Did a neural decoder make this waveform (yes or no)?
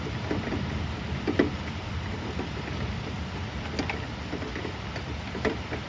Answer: no